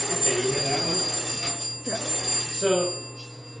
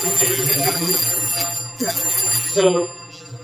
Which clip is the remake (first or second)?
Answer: second